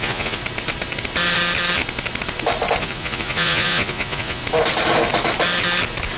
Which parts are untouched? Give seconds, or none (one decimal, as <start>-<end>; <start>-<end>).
0.4-2.8; 4.4-6.2